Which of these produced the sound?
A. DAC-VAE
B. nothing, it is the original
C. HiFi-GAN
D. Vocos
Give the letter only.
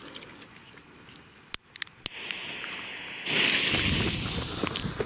B